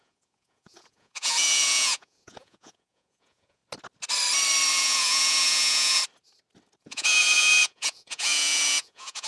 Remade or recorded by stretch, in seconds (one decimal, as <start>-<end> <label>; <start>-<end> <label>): 0.0-3.6 remade; 3.6-4.7 recorded; 4.7-6.0 remade; 6.0-6.8 recorded; 6.8-9.3 remade